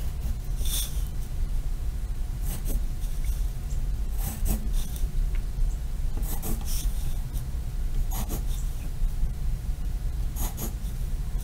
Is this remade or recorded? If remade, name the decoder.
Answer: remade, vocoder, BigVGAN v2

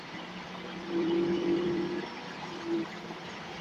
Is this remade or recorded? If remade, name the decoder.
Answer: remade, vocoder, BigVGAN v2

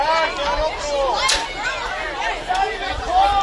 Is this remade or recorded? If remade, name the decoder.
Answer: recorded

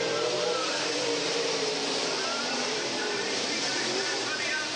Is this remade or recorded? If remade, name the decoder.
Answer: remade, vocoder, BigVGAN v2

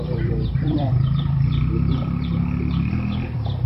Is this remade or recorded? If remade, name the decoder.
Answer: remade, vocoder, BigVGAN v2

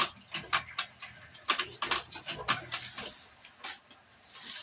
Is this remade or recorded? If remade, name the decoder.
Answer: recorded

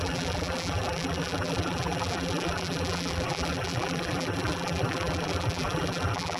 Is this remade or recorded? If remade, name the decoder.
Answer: remade, vocoder, BigVGAN v2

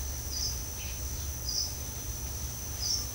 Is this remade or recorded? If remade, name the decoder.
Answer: remade, vocoder, BigVGAN v2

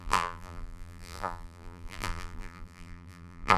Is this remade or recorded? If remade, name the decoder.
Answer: remade, vocoder, BigVGAN v2